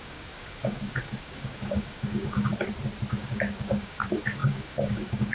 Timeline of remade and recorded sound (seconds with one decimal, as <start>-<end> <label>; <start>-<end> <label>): 0.0-2.5 remade; 2.5-3.1 recorded; 3.1-5.3 remade